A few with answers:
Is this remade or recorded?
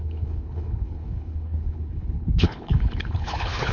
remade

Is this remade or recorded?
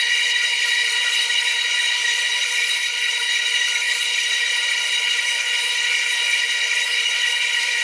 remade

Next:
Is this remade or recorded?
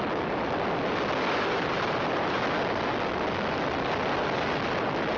recorded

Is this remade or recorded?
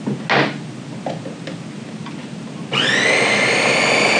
recorded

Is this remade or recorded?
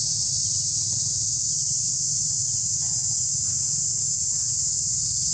recorded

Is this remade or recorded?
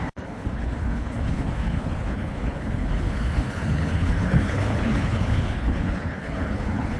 remade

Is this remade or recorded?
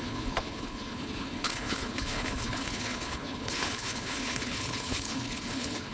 remade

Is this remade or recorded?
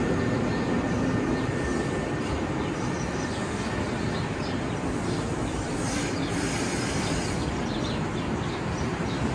recorded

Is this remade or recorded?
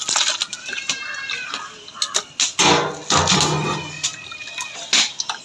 recorded